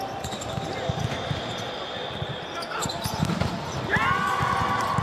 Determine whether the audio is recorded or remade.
recorded